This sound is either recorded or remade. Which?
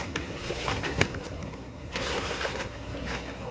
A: remade